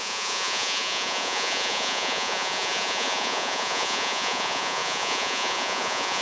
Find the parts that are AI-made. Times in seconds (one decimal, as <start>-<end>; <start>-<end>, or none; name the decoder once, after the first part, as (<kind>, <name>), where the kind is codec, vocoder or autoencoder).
0.0-6.2 (vocoder, Vocos)